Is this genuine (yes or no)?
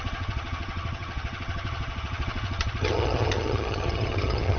no